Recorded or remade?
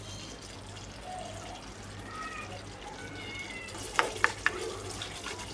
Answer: recorded